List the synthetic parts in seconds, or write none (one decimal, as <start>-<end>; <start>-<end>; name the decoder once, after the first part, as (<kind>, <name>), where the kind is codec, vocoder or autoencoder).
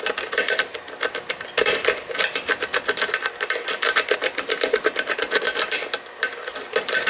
none